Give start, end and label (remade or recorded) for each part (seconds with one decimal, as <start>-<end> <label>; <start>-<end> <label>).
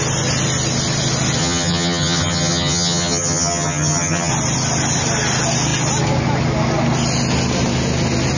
0.0-1.4 recorded; 1.4-4.3 remade; 4.3-8.4 recorded